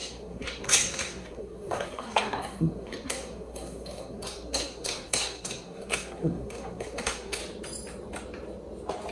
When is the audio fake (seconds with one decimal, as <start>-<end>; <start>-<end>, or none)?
0.0-7.4